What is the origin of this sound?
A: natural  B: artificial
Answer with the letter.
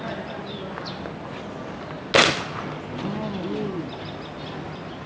A